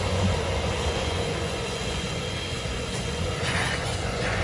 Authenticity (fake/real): fake